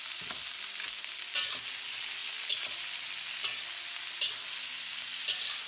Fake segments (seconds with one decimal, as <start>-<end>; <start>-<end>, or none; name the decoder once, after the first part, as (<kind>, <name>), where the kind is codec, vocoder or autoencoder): none